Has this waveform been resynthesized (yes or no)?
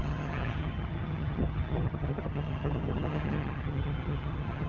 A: yes